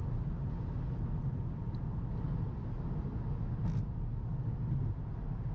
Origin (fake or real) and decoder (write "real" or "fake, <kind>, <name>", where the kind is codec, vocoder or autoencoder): real